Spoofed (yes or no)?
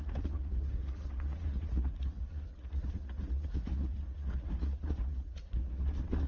yes